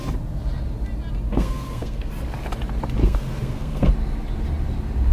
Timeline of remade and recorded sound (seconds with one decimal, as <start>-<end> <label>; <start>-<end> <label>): 0.0-1.3 recorded; 1.3-2.1 remade; 2.1-3.0 recorded; 3.0-3.9 remade; 3.9-5.1 recorded